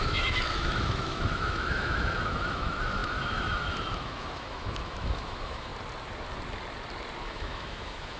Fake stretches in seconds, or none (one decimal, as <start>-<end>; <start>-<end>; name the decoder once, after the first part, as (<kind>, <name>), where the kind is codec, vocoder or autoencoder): 0.0-5.7 (autoencoder, DAC-VAE); 7.2-8.2